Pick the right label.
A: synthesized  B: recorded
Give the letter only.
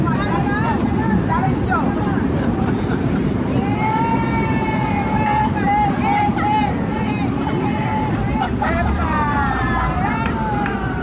A